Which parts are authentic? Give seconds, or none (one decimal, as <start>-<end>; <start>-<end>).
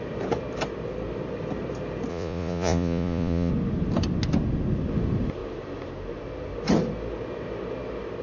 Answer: 0.0-2.1; 3.5-8.2